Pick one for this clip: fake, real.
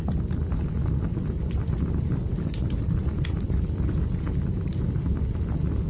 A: real